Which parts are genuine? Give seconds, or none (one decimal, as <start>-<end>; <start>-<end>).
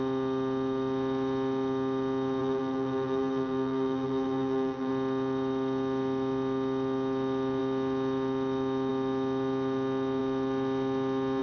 0.0-2.4; 4.9-11.4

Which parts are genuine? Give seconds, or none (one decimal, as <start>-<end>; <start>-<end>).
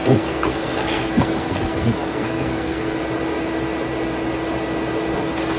3.0-5.6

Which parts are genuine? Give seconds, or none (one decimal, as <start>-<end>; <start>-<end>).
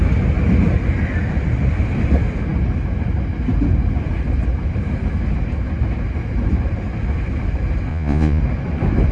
0.0-7.9; 8.4-9.1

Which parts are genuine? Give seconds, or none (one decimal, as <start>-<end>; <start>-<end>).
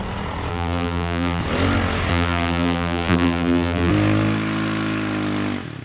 0.0-0.5; 1.4-2.1; 3.9-5.8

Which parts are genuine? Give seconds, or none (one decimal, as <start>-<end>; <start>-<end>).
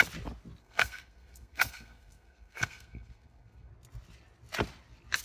0.0-0.6; 3.7-5.2